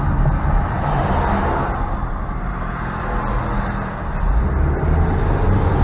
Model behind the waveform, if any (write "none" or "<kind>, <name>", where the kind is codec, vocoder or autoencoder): none